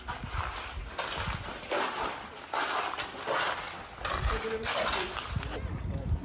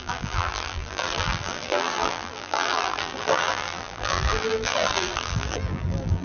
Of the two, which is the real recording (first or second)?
first